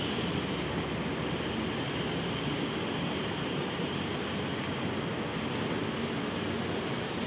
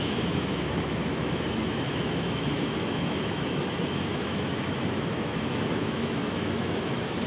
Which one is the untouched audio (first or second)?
first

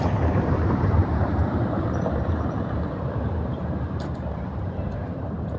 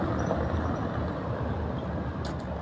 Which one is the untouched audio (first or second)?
second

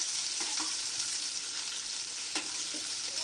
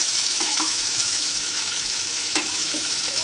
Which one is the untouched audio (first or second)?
first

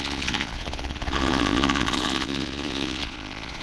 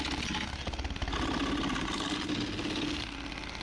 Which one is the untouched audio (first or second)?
second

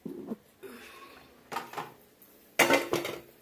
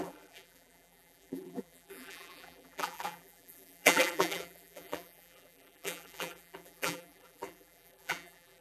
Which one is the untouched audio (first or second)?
first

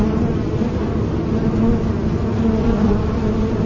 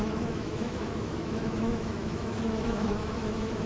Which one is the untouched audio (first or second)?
first